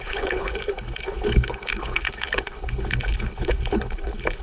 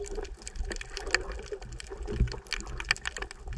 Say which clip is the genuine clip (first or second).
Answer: second